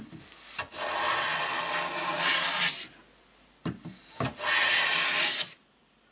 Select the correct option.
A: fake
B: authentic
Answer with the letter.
B